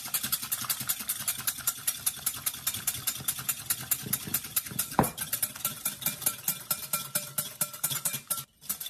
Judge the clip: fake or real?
real